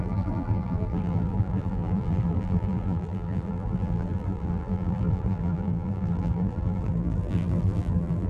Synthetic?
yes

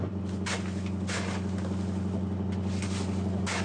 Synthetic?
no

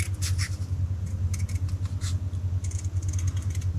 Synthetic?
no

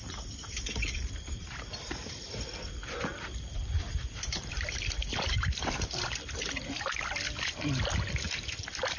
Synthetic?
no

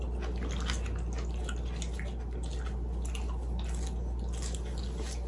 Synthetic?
no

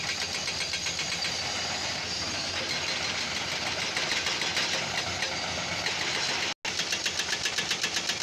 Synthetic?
no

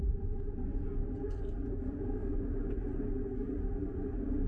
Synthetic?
no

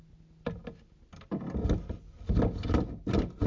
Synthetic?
no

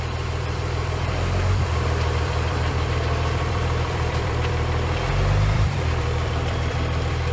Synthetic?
yes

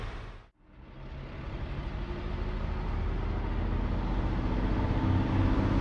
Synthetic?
no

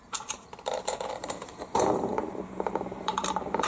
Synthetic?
yes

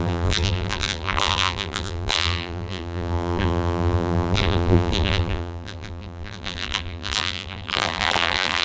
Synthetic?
yes